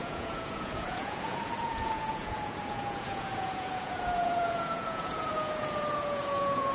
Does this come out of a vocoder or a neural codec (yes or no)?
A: yes